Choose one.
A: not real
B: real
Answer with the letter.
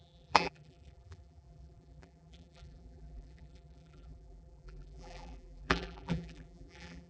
A